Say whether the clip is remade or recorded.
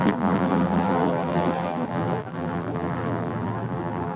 remade